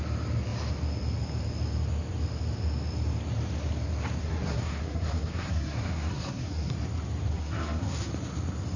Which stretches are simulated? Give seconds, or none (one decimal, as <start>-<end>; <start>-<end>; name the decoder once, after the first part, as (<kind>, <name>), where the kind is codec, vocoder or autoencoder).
4.2-6.7 (codec, SNAC); 7.3-8.1